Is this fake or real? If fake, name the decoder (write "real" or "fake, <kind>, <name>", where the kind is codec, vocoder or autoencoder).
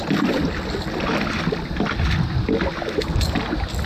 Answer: real